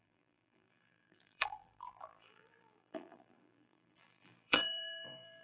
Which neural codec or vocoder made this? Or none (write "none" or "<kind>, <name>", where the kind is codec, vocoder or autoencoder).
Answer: vocoder, BigVGAN v2